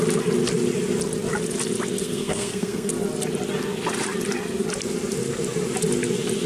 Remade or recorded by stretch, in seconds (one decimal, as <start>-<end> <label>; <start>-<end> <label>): 0.0-2.0 recorded; 2.0-2.9 remade; 2.9-6.5 recorded